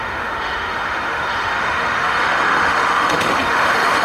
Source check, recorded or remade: remade